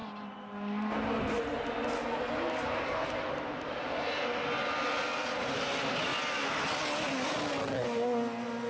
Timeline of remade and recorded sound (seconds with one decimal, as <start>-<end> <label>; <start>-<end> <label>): 0.0-8.7 recorded